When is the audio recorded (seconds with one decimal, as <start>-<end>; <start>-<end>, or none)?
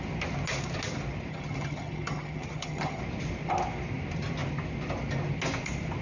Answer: 0.0-1.3; 3.0-6.0